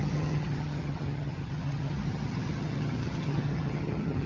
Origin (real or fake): fake